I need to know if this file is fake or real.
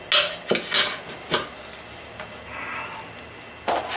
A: real